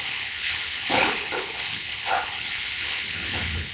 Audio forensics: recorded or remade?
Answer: remade